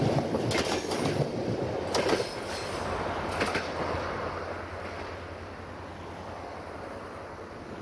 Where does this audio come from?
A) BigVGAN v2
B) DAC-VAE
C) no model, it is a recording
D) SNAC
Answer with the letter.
C